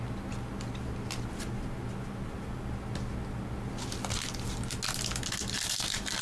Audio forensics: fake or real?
real